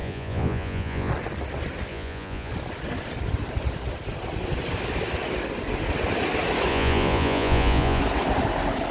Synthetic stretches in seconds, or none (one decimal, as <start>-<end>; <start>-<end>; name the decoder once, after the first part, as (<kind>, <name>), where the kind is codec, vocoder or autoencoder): 0.0-1.1 (vocoder, Vocos); 1.9-2.5; 6.7-8.0